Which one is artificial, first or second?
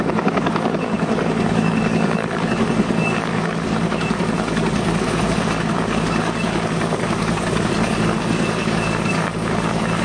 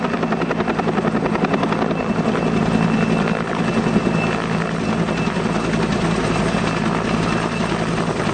first